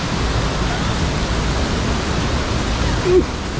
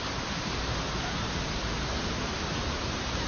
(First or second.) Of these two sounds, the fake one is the second